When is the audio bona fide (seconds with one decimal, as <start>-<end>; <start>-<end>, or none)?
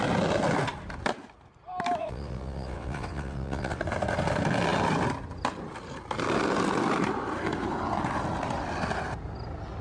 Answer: 0.0-2.0; 3.8-9.8